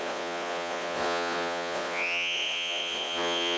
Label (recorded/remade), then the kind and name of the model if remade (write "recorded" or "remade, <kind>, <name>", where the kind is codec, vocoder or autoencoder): remade, vocoder, Vocos